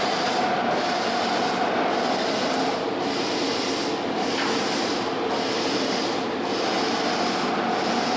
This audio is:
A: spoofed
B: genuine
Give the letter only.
B